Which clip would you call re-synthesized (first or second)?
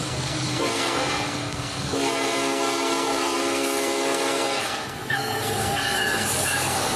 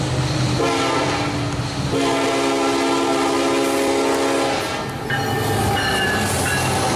first